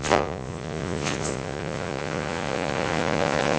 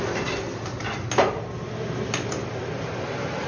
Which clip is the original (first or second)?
second